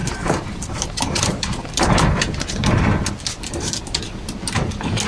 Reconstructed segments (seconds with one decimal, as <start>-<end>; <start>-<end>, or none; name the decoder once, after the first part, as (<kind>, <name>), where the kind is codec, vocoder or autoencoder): 0.0-3.1 (vocoder, BigVGAN v2)